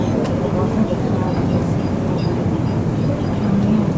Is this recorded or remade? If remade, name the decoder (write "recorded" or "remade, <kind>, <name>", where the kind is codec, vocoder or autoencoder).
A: recorded